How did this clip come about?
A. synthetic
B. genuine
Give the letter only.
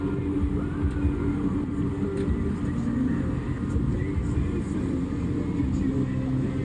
B